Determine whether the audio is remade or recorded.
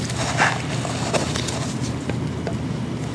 recorded